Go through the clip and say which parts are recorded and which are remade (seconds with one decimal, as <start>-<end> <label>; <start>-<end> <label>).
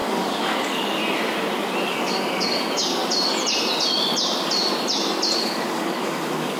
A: 0.0-1.0 remade; 1.0-1.9 recorded; 1.9-3.0 remade; 3.0-5.4 recorded; 5.4-6.6 remade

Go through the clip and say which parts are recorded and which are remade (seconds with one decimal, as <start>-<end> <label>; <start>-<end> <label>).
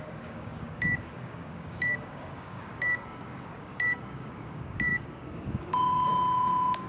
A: 0.0-6.1 remade; 6.1-6.9 recorded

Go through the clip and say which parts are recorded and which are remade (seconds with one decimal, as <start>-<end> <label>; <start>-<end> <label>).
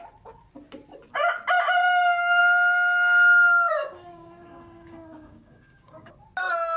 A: 0.0-2.4 recorded; 2.4-6.1 remade; 6.1-6.8 recorded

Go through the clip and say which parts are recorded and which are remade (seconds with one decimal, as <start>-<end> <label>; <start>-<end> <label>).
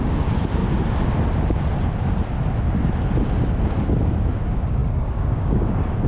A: 0.0-0.6 remade; 0.6-4.3 recorded; 4.3-6.1 remade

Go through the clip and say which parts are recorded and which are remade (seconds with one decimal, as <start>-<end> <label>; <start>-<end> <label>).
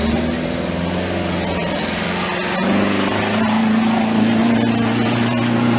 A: 0.0-5.8 recorded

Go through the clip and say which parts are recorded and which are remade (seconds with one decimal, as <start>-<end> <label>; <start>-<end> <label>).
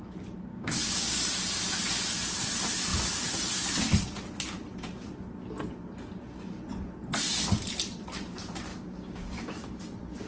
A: 0.0-0.5 recorded; 0.5-1.3 remade; 1.3-8.7 recorded; 8.7-9.8 remade; 9.8-10.3 recorded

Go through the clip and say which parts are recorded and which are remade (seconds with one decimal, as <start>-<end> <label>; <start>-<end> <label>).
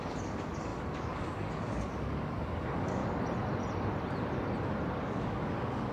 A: 0.0-3.0 remade; 3.0-5.0 recorded; 5.0-5.9 remade